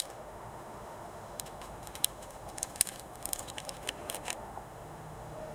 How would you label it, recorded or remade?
remade